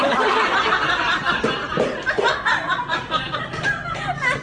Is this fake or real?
real